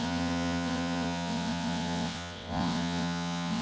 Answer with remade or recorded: remade